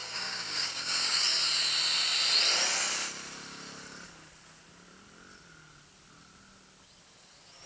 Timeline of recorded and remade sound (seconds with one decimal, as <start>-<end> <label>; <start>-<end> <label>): 0.0-1.2 remade; 1.2-7.7 recorded